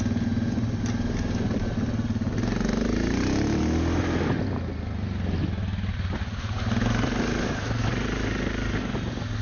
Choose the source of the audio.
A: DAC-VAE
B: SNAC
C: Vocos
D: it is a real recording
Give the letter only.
D